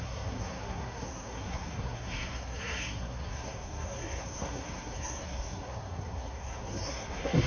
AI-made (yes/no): yes